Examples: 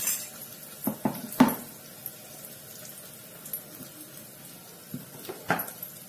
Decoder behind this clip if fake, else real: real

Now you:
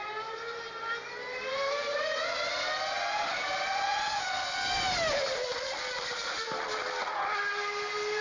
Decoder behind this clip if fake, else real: real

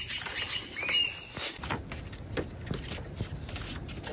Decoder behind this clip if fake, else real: real